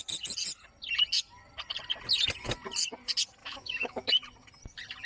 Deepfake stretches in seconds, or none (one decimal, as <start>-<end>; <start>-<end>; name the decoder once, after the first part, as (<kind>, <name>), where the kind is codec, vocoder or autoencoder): 3.4-4.1 (autoencoder, DAC-VAE)